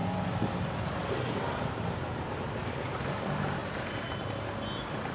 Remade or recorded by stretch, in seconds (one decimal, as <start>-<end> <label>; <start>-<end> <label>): 0.0-5.1 recorded